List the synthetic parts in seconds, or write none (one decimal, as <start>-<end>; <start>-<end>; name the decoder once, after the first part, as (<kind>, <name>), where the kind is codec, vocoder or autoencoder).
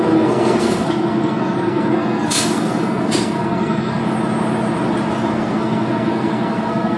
0.0-4.0 (codec, SNAC); 5.3-7.0